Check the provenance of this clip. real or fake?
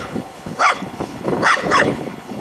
fake